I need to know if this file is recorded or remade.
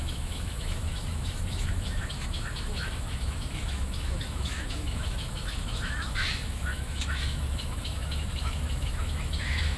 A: remade